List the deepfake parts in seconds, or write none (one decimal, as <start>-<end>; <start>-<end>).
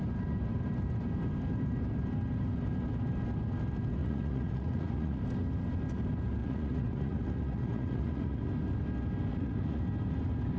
4.0-5.2; 6.4-8.5; 9.3-9.8